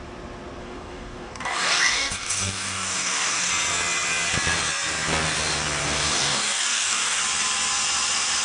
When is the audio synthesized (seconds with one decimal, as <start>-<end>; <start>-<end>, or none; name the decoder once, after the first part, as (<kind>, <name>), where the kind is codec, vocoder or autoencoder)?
0.6-3.5 (codec, DAC); 5.8-7.2